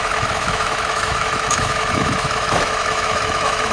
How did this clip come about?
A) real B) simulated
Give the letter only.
B